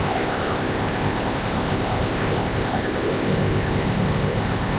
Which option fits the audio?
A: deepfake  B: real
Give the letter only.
A